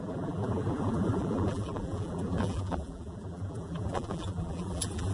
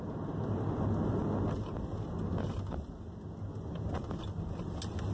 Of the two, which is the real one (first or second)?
second